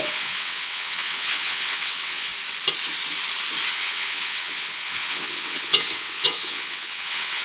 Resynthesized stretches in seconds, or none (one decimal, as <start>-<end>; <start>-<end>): 0.0-2.3; 3.7-7.4